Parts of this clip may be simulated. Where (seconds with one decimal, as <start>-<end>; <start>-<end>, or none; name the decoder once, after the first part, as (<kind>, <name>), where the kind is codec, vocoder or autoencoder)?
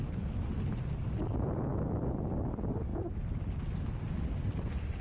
2.9-3.5 (vocoder, BigVGAN v2)